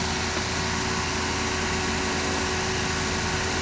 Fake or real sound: real